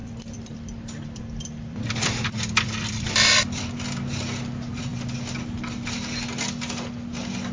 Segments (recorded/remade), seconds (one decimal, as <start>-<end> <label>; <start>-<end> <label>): 0.0-3.6 remade; 3.6-7.5 recorded